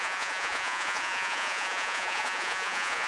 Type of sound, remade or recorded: remade